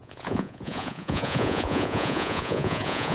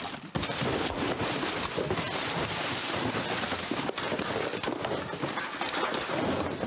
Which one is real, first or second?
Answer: second